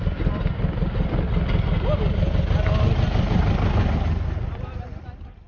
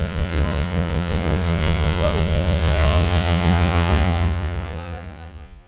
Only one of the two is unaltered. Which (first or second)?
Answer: first